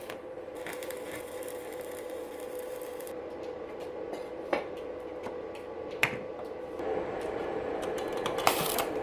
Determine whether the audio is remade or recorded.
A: remade